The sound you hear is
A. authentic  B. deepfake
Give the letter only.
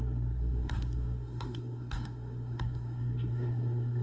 B